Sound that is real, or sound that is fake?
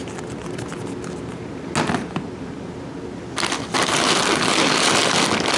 real